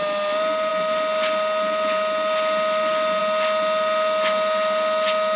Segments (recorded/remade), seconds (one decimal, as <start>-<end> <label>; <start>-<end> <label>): 0.0-5.4 recorded